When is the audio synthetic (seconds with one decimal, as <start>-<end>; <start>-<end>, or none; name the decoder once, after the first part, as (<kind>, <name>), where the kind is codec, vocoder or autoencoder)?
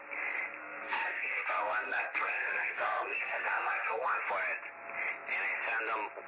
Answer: 0.6-4.2 (codec, SNAC)